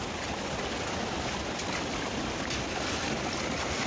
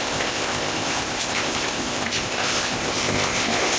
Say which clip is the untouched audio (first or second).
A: first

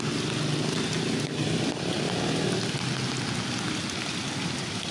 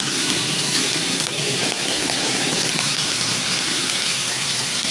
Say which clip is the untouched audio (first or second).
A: first